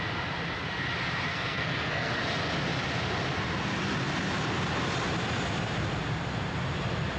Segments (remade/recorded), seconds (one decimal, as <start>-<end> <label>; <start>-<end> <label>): 0.0-1.3 recorded; 1.3-2.1 remade; 2.1-7.2 recorded